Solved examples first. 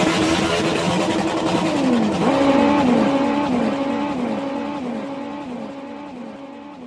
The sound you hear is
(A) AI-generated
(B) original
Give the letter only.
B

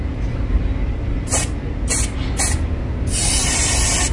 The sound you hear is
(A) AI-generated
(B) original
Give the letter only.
B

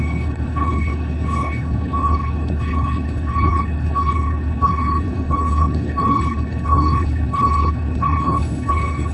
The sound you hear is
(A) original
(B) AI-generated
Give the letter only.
B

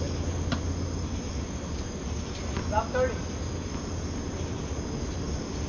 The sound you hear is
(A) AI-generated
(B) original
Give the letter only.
B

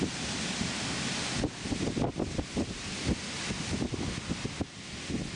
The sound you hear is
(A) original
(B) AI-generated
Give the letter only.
A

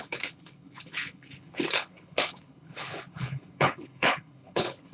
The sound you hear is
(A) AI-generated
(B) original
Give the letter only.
A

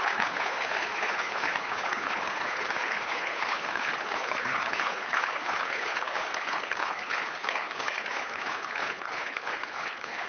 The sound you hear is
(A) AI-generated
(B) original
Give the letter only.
A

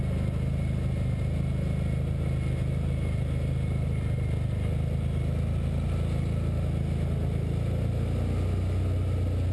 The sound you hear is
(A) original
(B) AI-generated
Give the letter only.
A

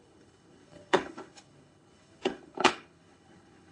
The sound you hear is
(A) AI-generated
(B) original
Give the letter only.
A